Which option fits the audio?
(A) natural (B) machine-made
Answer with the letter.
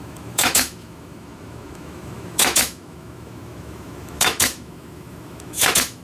B